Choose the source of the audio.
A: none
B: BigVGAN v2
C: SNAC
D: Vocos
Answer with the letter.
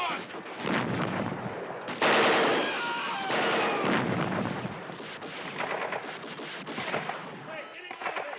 A